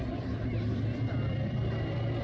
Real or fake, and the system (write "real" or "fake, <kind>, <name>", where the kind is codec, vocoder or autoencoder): fake, vocoder, BigVGAN v2